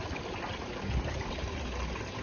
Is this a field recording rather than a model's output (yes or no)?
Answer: yes